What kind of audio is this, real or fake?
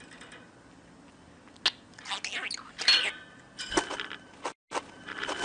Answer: real